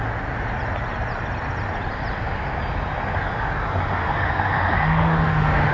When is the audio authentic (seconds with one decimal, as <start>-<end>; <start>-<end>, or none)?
0.0-4.0